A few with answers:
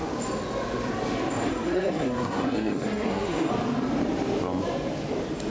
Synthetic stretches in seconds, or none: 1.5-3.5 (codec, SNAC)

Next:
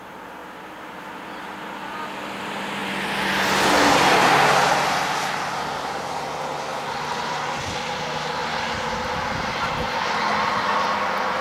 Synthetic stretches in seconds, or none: 6.7-7.7 (vocoder, BigVGAN v2); 8.4-9.5

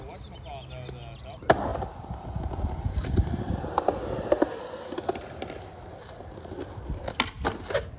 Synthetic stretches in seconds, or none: none

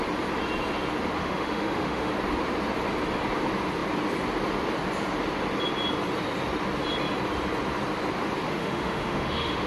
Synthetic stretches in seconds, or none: 1.2-2.1 (autoencoder, DAC-VAE); 8.6-9.7

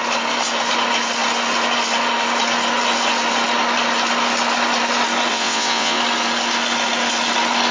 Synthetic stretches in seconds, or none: 5.3-6.0 (vocoder, WaveNeXt)

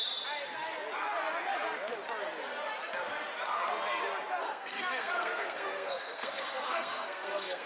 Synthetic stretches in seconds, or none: 4.4-7.7 (codec, SNAC)

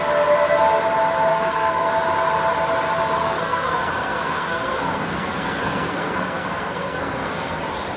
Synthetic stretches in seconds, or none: 1.3-1.9 (codec, SNAC); 3.2-7.6